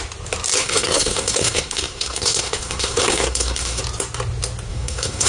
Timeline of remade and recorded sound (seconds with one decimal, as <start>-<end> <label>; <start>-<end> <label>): 0.0-0.6 recorded; 0.6-3.8 remade; 3.8-4.7 recorded; 4.7-5.3 remade